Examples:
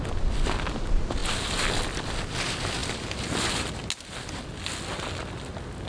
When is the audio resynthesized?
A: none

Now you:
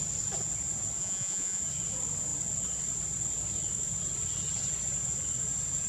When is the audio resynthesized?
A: 1.0-1.6 (vocoder, Vocos)

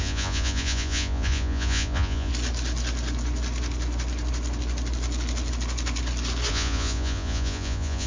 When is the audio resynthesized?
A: 0.0-2.3 (vocoder, Vocos); 6.5-8.1

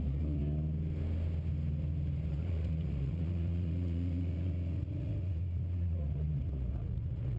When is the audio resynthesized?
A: 0.0-0.4 (vocoder, Vocos); 2.3-7.4

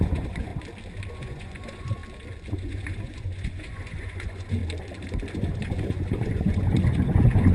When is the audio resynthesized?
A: 0.0-0.5 (vocoder, Vocos); 1.2-2.0; 2.5-4.6; 5.3-7.5

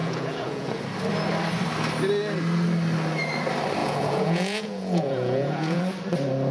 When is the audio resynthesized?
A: 0.0-0.8 (vocoder, Vocos); 3.8-5.8